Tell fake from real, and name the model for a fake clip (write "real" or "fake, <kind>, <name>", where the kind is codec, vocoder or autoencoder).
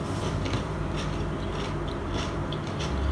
fake, vocoder, BigVGAN v2